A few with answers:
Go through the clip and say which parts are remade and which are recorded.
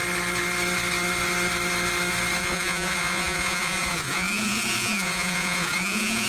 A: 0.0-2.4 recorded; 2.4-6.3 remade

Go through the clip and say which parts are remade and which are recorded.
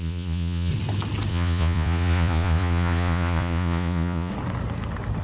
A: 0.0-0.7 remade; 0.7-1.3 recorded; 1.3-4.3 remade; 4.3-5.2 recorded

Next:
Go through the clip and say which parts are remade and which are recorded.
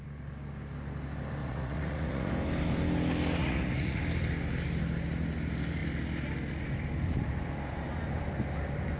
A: 0.0-1.4 recorded; 1.4-2.3 remade; 2.3-3.4 recorded; 3.4-4.0 remade; 4.0-9.0 recorded